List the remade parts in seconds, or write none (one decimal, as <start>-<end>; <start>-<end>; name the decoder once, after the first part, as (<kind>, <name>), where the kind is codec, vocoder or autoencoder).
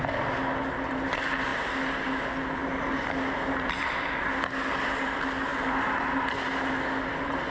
none